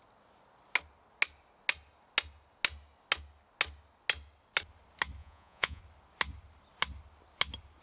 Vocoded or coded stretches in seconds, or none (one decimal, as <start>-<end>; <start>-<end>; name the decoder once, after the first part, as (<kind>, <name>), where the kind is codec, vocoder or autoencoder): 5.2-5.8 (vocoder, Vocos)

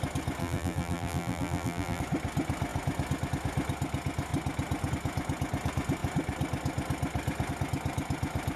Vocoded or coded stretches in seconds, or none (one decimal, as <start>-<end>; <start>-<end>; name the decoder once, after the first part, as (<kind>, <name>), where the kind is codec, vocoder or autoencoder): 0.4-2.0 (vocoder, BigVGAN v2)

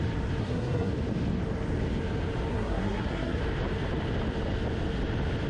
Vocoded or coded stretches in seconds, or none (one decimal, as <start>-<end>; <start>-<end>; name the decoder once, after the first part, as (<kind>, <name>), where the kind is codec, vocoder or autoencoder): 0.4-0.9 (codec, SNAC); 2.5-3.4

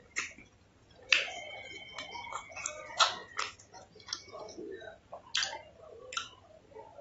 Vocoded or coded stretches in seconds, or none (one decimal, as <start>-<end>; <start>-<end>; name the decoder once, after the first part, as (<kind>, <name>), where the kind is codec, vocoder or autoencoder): none